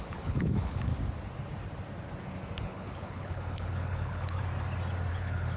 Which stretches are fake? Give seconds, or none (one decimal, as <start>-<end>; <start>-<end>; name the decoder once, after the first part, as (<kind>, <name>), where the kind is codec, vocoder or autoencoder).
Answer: 0.0-0.9 (codec, HILCodec); 2.6-4.4; 5.1-5.6